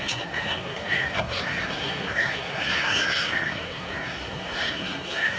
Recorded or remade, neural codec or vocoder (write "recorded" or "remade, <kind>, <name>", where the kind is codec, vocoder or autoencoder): remade, codec, SNAC